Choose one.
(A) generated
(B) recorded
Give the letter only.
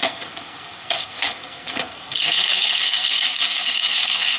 A